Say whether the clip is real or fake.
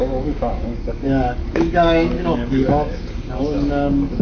fake